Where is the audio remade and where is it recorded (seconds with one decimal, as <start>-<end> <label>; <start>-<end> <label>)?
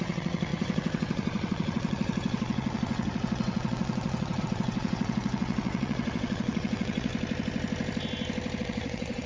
0.0-7.1 remade; 7.1-8.6 recorded; 8.6-9.3 remade